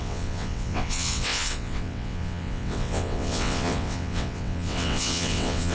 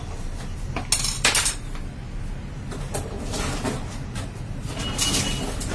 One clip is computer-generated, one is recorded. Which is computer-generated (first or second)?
first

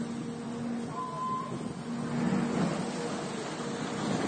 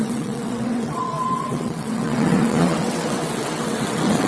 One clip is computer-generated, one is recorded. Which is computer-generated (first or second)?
second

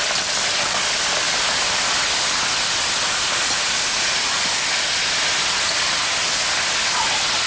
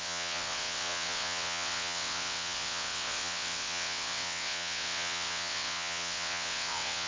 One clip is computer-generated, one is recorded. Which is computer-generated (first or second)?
second